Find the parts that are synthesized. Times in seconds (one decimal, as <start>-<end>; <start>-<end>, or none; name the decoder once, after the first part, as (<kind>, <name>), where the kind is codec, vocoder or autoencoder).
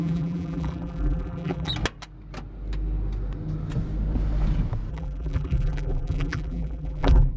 0.0-1.7 (vocoder, BigVGAN v2); 4.9-7.4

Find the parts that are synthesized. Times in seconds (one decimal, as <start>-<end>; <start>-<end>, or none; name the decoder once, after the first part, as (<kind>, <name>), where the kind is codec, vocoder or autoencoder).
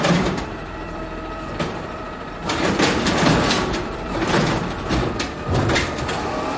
0.0-6.6 (vocoder, BigVGAN v2)